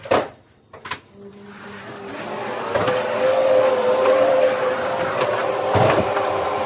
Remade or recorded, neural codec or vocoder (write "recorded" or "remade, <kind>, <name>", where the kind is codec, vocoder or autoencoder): remade, vocoder, BigVGAN v2